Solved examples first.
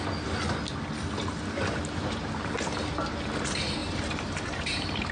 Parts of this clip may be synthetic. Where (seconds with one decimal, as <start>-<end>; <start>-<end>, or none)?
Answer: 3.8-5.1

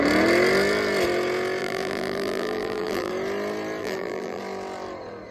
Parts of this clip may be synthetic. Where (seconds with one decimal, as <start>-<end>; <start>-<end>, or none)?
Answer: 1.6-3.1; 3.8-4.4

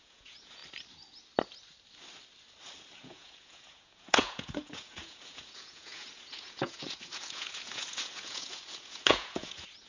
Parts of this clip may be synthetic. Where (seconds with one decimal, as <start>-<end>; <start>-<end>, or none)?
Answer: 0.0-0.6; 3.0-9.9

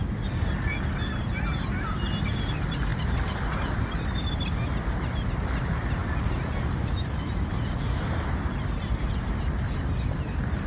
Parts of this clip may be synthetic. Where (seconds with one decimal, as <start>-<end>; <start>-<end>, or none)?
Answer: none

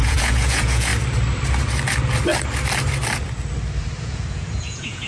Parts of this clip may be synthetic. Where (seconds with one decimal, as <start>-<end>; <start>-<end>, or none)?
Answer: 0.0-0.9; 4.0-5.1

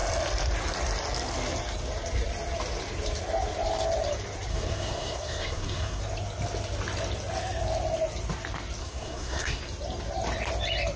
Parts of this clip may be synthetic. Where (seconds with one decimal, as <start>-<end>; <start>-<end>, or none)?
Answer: 4.5-6.0; 8.8-9.6